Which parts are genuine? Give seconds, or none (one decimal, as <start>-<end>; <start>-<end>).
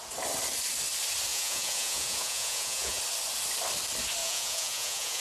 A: 0.0-1.3; 3.0-4.2